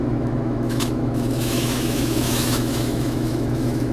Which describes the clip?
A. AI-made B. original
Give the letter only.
A